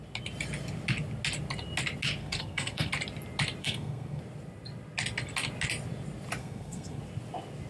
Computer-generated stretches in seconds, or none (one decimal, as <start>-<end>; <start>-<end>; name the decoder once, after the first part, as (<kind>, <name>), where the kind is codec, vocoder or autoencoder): 2.2-2.9 (codec, SNAC); 3.6-4.2; 6.4-7.0